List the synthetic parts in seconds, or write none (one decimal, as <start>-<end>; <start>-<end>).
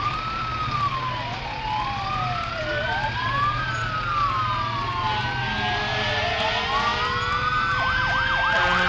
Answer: none